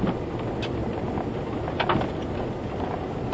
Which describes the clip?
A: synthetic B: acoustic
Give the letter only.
B